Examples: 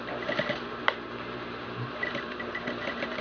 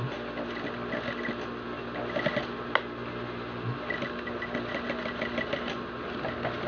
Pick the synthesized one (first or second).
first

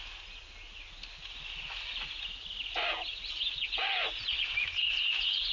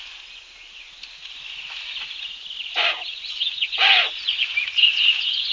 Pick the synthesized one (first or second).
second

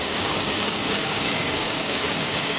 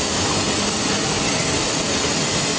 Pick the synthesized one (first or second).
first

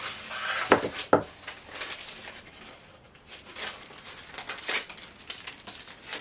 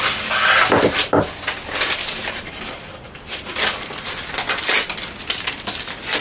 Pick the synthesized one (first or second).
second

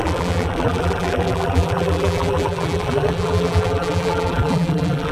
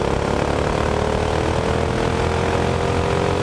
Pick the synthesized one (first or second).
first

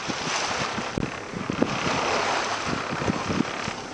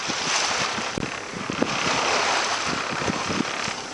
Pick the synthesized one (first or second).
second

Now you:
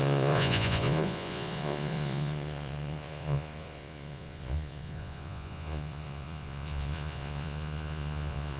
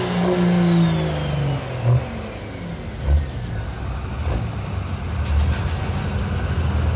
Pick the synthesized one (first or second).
first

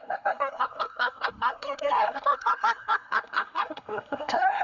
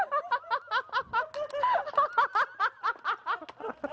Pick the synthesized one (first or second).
first